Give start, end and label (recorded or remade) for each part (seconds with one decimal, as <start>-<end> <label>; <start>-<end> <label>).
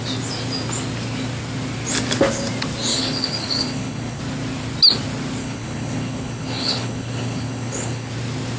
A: 0.0-2.9 recorded; 2.9-4.2 remade; 4.2-5.4 recorded; 5.4-8.1 remade; 8.1-8.6 recorded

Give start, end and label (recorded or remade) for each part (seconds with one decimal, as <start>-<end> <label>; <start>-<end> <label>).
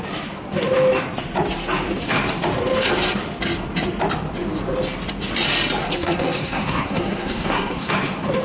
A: 0.0-5.8 recorded; 5.8-7.9 remade; 7.9-8.4 recorded